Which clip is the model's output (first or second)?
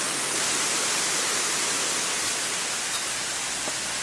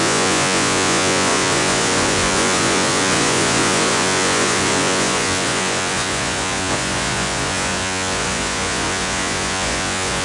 second